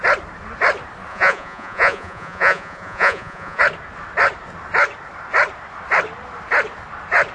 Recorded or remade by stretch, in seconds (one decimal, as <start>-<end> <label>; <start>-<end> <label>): 0.0-1.1 recorded; 1.1-3.6 remade; 3.6-7.3 recorded